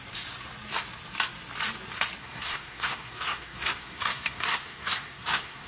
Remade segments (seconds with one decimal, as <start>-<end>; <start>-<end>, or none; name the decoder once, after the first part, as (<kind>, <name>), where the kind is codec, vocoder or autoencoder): 2.2-5.7 (codec, SNAC)